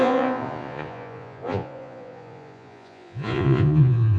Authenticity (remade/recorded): remade